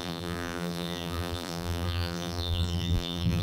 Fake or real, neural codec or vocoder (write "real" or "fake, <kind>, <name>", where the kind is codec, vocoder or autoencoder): fake, vocoder, BigVGAN v2